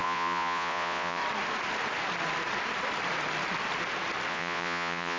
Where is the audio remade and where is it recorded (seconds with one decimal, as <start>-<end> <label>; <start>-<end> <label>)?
0.0-1.2 remade; 1.2-4.3 recorded; 4.3-5.2 remade